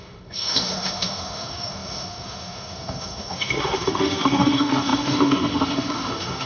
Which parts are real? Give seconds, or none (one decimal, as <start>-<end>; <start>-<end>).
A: none